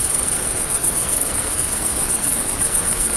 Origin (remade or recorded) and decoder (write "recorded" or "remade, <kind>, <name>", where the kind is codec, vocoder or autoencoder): remade, codec, SNAC